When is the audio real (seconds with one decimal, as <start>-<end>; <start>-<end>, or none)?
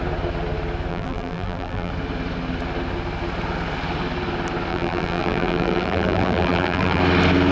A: 0.0-0.9; 1.9-4.7; 7.0-7.5